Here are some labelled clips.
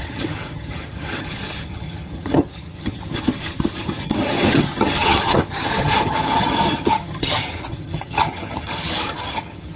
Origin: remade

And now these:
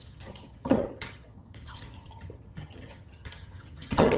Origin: remade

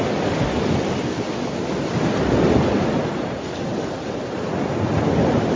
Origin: recorded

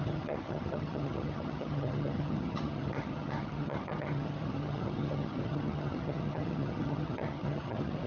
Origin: remade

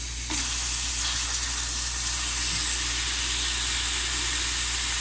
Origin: recorded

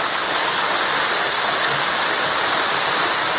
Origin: recorded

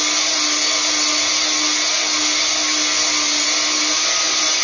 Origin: recorded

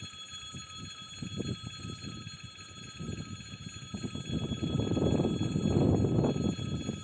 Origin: recorded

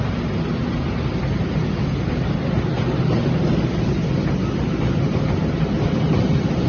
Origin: recorded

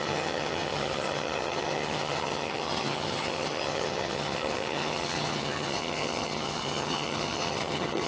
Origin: remade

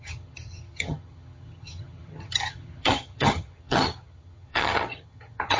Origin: remade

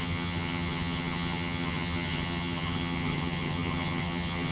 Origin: remade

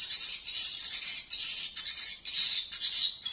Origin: recorded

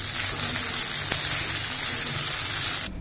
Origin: recorded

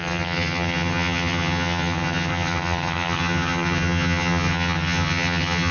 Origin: remade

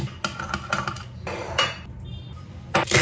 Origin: recorded